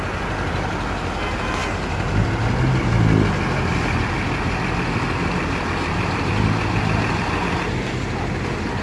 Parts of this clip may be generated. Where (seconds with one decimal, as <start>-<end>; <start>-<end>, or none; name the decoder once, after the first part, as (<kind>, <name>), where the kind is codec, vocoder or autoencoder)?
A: none